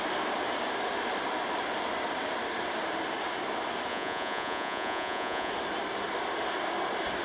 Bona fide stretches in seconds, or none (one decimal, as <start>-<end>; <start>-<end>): 0.0-3.9; 5.5-7.2

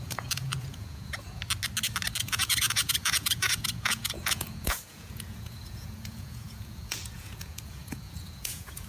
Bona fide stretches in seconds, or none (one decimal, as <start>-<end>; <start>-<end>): 1.4-2.2

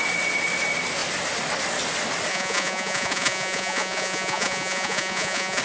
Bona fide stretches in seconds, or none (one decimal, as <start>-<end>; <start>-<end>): 0.0-2.3

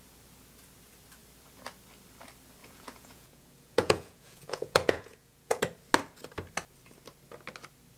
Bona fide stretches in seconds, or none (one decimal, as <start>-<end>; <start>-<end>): 0.0-2.6; 5.6-8.0